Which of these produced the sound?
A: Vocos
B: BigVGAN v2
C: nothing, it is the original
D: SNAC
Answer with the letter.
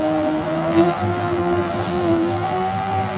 B